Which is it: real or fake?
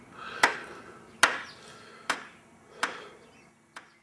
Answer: real